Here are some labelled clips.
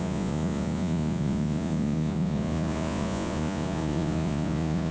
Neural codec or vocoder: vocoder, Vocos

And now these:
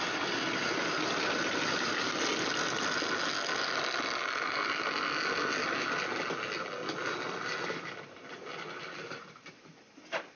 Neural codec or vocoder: none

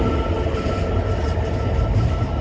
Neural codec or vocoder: none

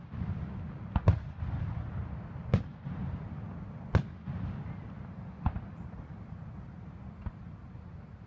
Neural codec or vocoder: none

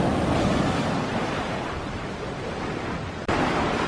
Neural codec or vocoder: none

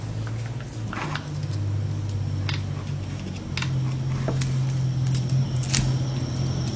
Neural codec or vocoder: none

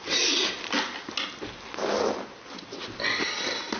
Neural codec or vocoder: none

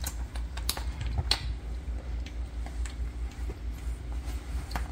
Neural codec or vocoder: none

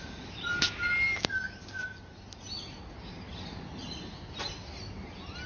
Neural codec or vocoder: none